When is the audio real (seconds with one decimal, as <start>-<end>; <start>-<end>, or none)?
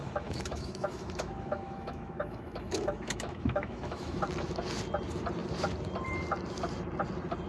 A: 4.2-7.5